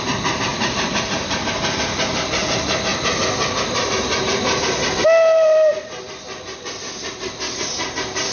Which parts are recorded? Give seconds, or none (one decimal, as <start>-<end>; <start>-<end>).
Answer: 0.0-0.5; 1.5-8.3